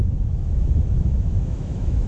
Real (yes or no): no